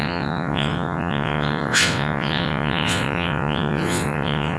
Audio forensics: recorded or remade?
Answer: remade